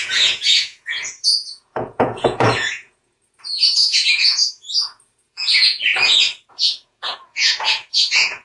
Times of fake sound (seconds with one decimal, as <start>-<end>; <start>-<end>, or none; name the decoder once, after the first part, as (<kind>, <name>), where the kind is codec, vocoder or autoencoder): 0.0-5.9 (vocoder, Vocos); 6.5-8.4